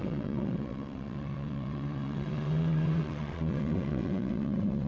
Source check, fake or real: fake